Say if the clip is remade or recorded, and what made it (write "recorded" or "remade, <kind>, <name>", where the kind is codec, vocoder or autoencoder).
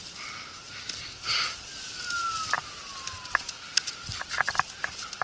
recorded